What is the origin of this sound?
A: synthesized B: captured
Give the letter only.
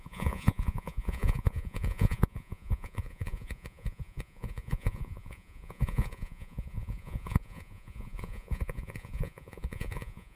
A